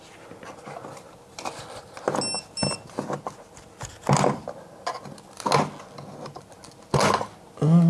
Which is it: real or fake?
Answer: real